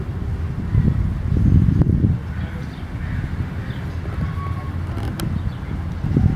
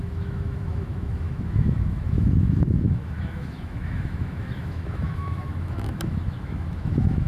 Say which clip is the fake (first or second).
second